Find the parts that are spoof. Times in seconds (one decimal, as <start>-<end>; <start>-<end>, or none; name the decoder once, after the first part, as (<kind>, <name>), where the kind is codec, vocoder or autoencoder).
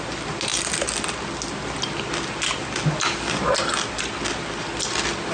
none